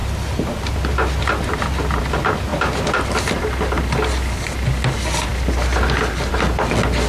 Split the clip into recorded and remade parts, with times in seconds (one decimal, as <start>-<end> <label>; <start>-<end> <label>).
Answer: 0.0-7.1 recorded